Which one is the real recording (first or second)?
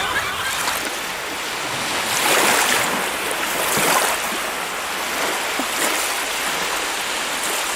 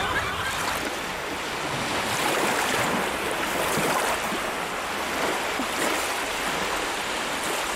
first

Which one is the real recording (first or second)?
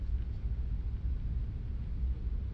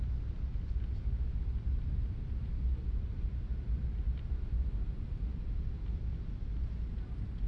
first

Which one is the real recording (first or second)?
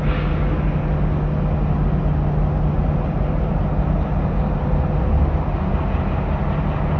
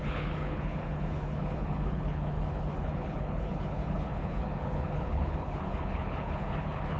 first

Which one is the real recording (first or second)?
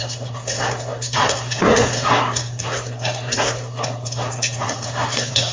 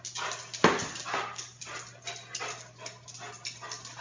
second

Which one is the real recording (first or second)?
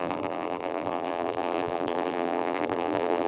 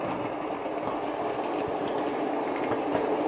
second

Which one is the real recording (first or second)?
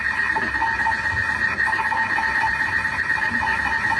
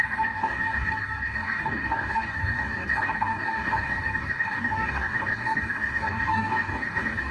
first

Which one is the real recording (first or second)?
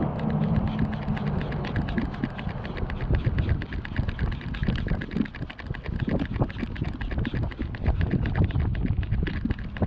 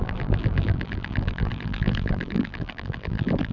first